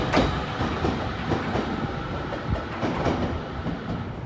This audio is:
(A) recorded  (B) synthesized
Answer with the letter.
A